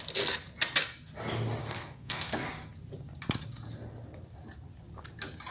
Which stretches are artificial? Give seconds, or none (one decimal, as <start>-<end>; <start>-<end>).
1.6-2.3